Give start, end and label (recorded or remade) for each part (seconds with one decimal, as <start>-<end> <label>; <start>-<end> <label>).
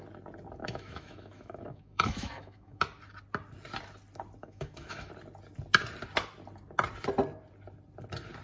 0.0-0.6 recorded; 0.6-2.8 remade; 2.8-4.4 recorded; 4.4-5.1 remade; 5.1-8.4 recorded